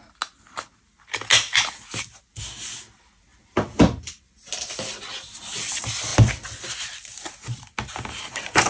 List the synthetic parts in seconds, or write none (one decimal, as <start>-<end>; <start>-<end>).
none